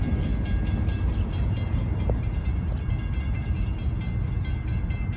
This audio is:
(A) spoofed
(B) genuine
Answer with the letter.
B